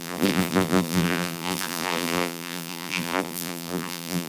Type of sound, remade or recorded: remade